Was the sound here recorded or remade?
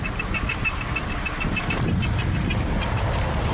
recorded